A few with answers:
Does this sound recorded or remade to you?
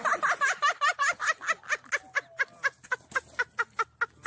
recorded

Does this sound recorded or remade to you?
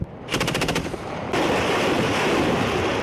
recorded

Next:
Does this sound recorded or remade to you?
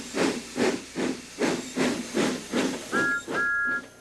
recorded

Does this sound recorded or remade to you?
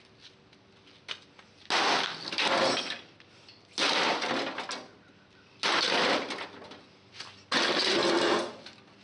recorded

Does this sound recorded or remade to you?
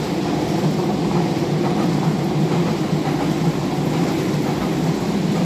recorded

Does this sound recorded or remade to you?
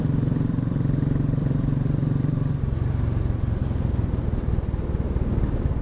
remade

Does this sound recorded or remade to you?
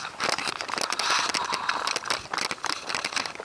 recorded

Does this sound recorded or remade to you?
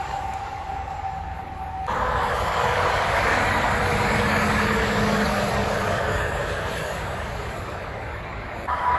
remade